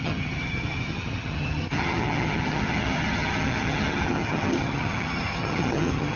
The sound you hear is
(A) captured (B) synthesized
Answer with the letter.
B